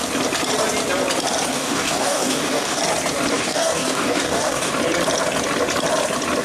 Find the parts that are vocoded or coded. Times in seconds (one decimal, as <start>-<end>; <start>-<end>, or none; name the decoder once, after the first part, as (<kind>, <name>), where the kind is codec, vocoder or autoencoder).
1.5-2.8 (codec, DAC); 3.3-4.7